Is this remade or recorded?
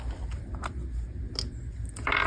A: recorded